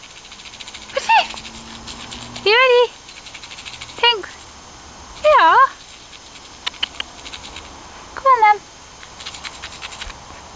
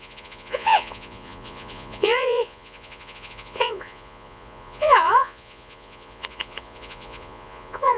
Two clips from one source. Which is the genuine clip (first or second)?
first